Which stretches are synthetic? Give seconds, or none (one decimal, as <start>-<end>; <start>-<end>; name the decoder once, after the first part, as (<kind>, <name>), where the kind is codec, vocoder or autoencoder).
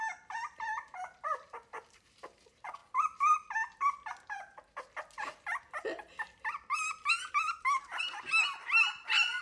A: 0.0-2.8 (vocoder, BigVGAN v2); 7.3-9.4